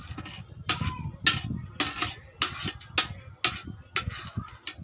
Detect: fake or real real